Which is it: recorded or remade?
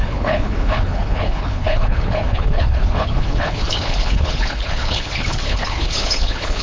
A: remade